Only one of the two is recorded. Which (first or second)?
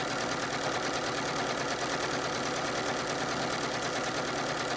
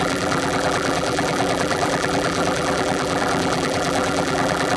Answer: first